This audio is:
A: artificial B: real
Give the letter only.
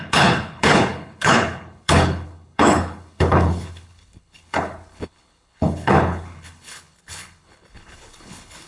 A